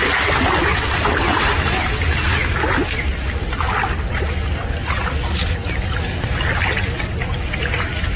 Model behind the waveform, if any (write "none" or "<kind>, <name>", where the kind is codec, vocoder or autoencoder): none